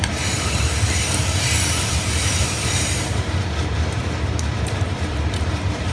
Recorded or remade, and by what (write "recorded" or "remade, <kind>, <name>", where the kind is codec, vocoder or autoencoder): remade, vocoder, BigVGAN v2